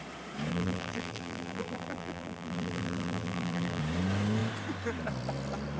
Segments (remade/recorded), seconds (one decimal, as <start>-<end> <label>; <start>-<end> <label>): 0.0-0.5 recorded; 0.5-3.8 remade; 3.8-5.8 recorded